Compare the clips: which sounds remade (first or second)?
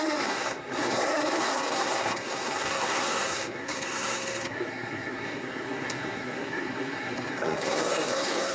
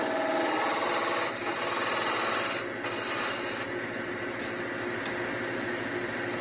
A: first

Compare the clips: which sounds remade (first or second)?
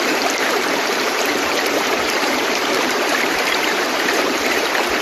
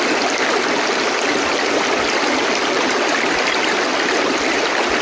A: first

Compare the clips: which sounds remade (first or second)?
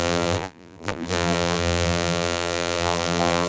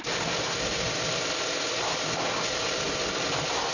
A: first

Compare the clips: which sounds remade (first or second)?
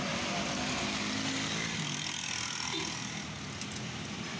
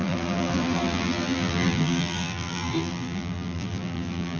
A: second